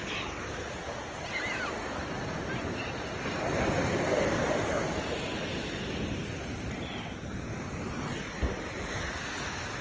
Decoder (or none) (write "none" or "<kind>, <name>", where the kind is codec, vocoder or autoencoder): none